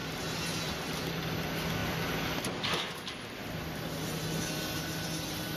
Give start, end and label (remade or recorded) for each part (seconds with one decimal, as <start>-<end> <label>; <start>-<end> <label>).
0.0-5.6 recorded

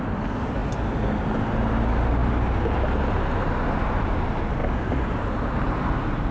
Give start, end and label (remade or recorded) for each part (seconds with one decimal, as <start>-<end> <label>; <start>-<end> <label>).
0.0-6.3 recorded

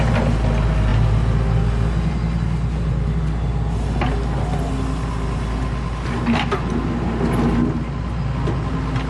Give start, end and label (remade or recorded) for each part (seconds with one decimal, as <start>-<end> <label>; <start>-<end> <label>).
0.0-9.1 recorded

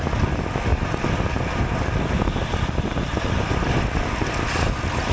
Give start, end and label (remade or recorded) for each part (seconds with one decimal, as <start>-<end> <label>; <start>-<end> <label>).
0.0-5.1 recorded